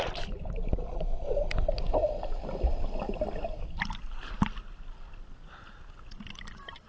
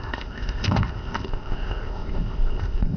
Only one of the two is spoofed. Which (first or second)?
second